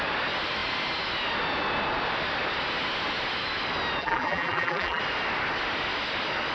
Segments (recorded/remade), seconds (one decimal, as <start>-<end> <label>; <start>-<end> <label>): 0.0-4.0 recorded; 4.0-5.0 remade; 5.0-6.5 recorded